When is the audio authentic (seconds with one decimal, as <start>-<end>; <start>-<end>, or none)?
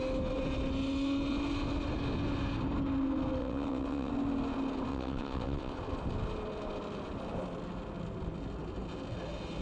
0.0-3.4; 4.1-4.9; 5.7-9.6